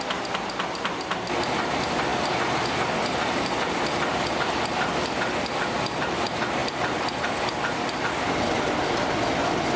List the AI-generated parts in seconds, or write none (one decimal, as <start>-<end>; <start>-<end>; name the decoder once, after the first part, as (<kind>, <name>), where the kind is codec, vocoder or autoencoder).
none